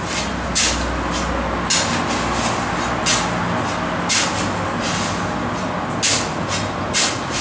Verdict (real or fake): real